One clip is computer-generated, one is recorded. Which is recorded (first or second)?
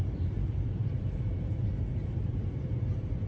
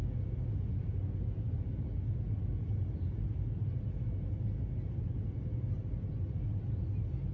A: second